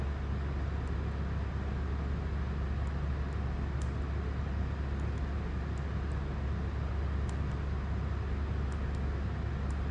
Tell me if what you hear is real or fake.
real